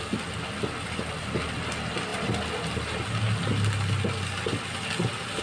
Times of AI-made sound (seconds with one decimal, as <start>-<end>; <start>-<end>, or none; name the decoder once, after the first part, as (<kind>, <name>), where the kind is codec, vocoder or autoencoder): none